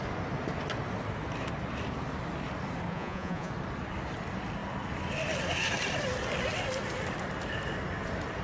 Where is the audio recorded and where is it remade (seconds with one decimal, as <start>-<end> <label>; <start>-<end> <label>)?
0.0-2.9 recorded; 2.9-3.5 remade; 3.5-8.4 recorded